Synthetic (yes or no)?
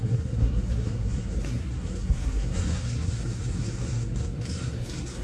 yes